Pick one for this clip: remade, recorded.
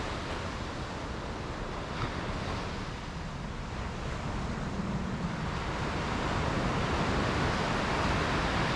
recorded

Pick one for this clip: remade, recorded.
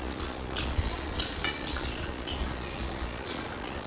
remade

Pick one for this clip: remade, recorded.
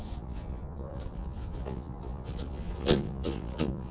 remade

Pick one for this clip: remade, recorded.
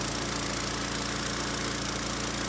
recorded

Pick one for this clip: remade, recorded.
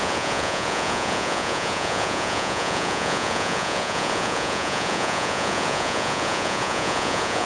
remade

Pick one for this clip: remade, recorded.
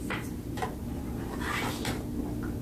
recorded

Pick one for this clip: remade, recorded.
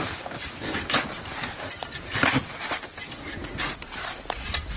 recorded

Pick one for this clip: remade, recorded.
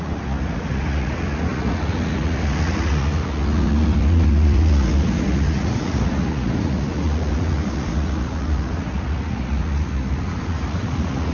remade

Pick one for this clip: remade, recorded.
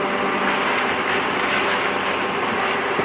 recorded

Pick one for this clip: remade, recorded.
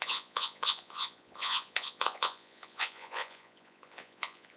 remade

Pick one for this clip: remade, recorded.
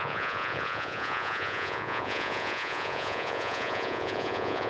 remade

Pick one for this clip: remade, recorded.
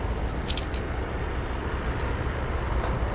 recorded